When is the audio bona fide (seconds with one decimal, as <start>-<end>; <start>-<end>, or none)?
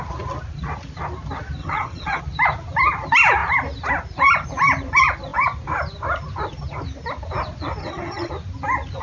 0.0-1.6; 2.2-7.8; 8.3-9.0